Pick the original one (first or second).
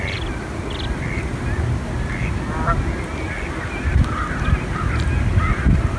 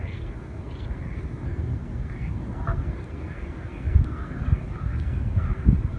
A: first